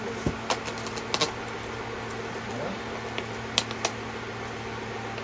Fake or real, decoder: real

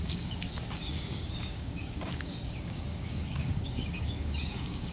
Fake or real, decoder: fake, codec, DAC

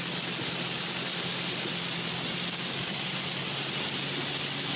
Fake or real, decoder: real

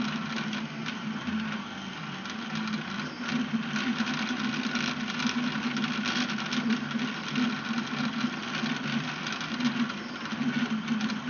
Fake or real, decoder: real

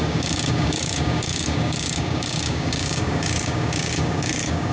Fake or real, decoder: fake, codec, DAC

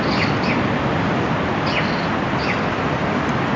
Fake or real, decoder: real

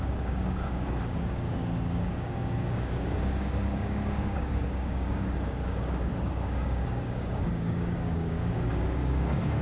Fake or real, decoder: fake, codec, DAC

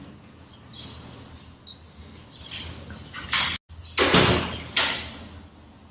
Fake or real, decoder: real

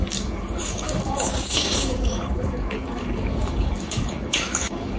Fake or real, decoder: fake, codec, DAC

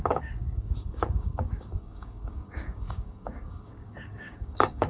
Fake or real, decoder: fake, codec, DAC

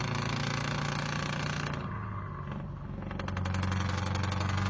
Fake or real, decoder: real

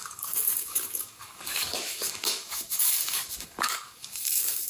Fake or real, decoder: fake, codec, DAC